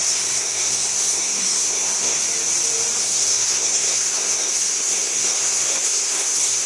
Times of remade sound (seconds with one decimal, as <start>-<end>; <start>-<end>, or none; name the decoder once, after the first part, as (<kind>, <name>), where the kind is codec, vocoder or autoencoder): 0.0-2.2 (codec, SNAC); 3.0-6.7